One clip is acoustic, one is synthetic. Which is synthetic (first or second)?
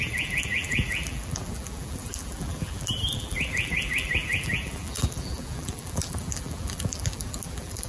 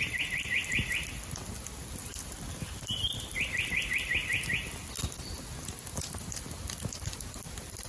first